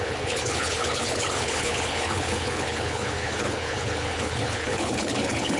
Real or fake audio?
fake